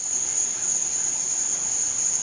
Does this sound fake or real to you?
real